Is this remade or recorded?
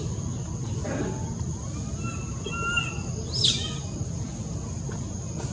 recorded